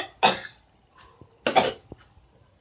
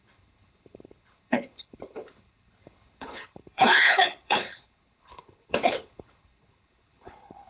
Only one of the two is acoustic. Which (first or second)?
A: first